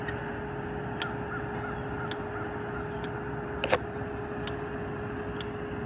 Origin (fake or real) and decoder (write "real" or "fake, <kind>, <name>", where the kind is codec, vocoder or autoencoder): real